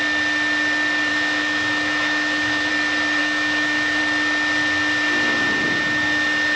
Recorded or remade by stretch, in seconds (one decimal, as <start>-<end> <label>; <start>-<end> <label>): 0.0-1.1 recorded; 1.1-2.7 remade; 2.7-3.2 recorded; 3.2-4.0 remade; 4.0-6.6 recorded

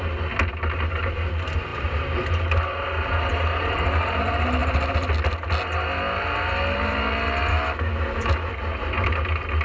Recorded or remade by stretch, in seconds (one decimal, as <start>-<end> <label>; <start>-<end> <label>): 0.0-7.5 recorded; 7.5-8.5 remade; 8.5-9.6 recorded